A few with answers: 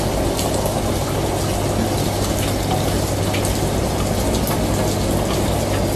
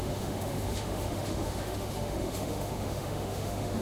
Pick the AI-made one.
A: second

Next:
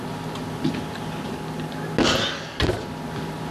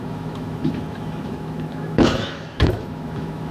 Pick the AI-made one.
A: second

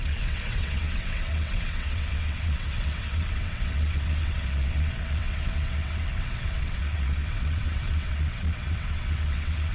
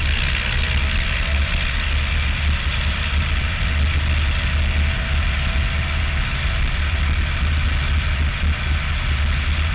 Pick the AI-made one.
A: first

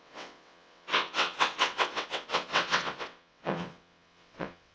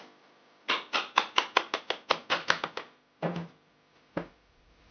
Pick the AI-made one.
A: first